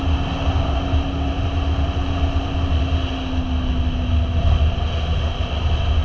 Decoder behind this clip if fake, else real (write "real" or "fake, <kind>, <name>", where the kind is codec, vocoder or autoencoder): real